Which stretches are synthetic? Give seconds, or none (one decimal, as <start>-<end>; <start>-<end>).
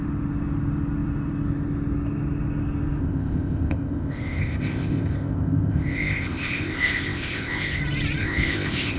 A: 3.0-7.8; 8.2-9.0